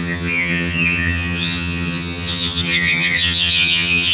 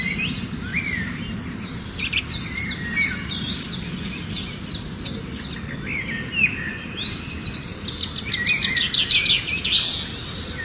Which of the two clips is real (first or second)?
second